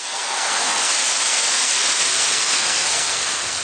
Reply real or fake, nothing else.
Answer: fake